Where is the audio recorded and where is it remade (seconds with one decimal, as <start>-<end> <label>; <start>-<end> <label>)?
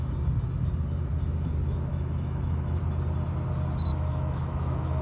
0.0-1.9 recorded; 1.9-2.8 remade; 2.8-3.9 recorded; 3.9-5.0 remade